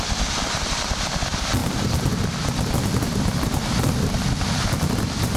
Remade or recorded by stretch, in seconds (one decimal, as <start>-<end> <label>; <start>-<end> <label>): 0.0-5.4 recorded